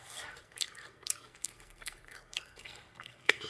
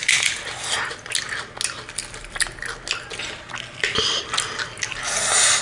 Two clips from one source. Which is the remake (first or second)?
first